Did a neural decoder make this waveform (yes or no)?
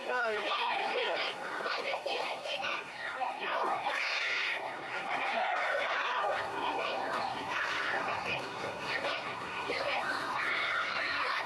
yes